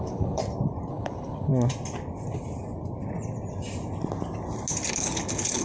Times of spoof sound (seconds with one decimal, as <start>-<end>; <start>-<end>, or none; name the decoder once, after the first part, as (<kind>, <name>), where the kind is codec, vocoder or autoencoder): 0.0-0.4 (codec, HILCodec); 0.9-1.5; 4.9-5.6